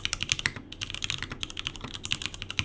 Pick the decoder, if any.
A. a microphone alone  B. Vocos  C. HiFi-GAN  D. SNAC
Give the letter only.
A